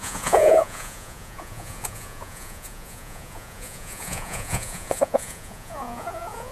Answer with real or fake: fake